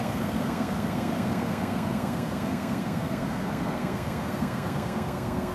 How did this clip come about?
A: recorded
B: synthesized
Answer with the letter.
B